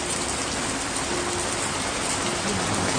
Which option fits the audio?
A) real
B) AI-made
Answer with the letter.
A